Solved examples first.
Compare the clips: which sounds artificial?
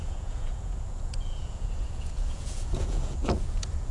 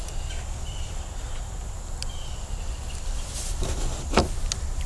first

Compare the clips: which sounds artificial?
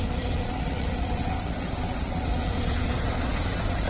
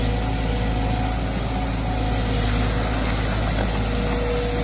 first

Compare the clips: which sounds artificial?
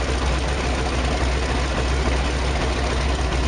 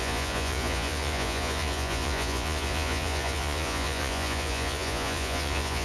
second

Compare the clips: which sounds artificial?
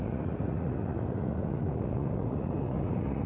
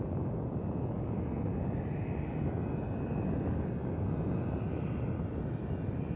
first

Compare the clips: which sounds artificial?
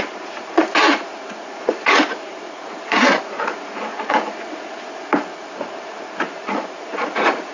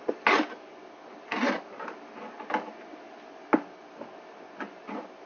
first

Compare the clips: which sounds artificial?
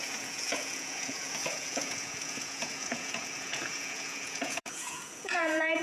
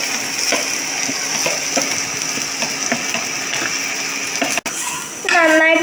first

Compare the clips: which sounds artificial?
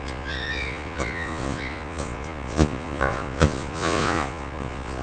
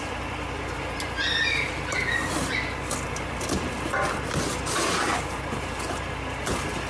first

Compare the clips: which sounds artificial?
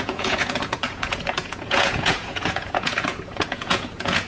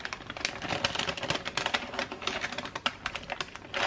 first